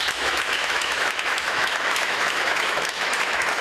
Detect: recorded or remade remade